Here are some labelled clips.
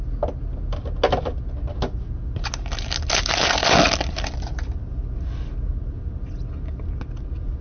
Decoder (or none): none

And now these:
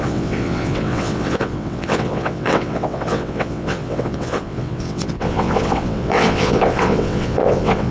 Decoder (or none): vocoder, WaveNeXt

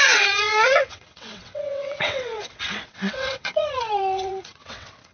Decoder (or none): vocoder, WaveNeXt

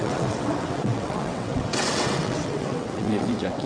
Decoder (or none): vocoder, WaveNeXt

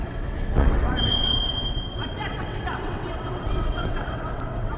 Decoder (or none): vocoder, WaveNeXt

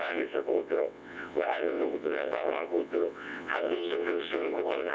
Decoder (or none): vocoder, WaveNeXt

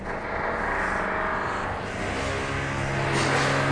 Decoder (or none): none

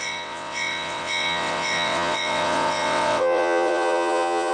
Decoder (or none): vocoder, WaveNeXt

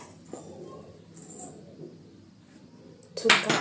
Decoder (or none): none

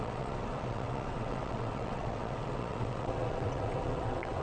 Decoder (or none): vocoder, WaveNeXt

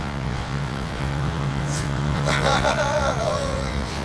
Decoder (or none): vocoder, WaveNeXt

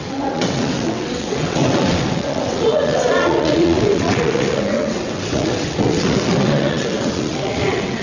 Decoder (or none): vocoder, WaveNeXt